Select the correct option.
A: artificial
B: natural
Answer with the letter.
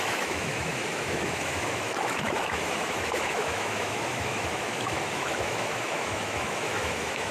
A